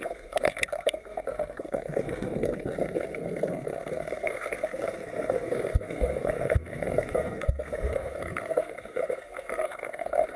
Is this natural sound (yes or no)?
no